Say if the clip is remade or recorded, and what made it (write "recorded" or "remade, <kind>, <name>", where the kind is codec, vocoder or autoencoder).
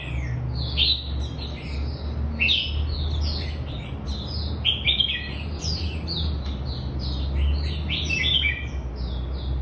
recorded